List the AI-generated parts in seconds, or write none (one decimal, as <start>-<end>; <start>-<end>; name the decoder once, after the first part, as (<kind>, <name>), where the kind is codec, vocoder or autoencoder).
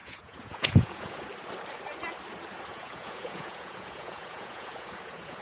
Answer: 0.0-1.2 (vocoder, Vocos); 2.7-5.4